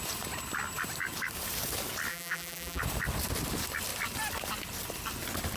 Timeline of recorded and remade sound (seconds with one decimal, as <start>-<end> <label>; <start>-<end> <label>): 0.0-2.1 recorded; 2.1-2.8 remade; 2.8-5.6 recorded